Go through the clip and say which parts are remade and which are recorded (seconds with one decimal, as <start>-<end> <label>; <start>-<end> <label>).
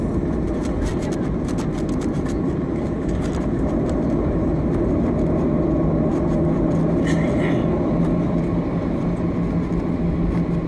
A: 0.0-10.7 recorded